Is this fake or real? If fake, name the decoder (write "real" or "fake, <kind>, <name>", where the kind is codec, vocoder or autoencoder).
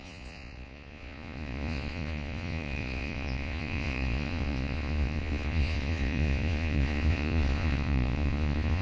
fake, vocoder, Vocos